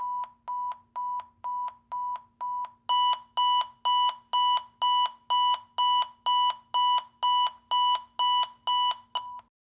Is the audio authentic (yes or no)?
yes